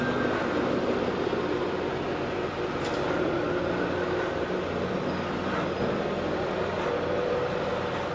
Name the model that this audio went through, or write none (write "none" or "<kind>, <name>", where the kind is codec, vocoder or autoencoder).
none